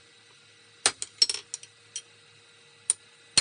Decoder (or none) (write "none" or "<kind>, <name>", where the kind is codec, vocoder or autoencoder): none